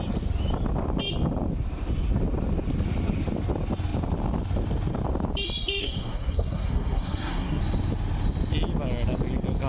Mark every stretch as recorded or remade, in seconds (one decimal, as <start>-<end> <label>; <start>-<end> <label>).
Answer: 0.0-5.8 recorded; 5.8-7.6 remade; 7.6-9.7 recorded